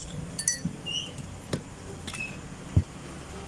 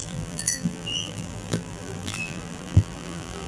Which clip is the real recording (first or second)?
first